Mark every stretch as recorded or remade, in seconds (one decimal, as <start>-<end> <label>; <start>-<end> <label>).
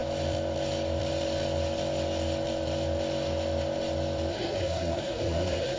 0.0-4.3 recorded; 4.3-5.8 remade